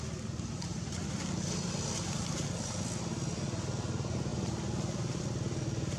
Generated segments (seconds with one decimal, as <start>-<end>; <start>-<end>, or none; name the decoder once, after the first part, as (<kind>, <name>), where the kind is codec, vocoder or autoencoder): none